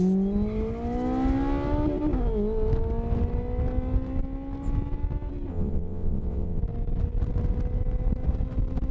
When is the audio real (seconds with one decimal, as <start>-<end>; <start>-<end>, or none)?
0.0-5.5; 6.6-8.9